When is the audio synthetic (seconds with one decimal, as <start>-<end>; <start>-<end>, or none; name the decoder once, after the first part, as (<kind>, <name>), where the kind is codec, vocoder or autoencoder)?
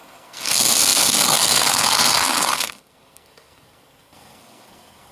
0.0-5.1 (codec, SNAC)